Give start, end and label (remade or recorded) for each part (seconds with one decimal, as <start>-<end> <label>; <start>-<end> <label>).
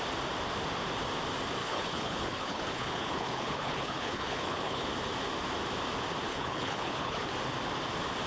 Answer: 0.0-1.6 recorded; 1.6-4.9 remade; 4.9-6.3 recorded; 6.3-7.3 remade; 7.3-8.3 recorded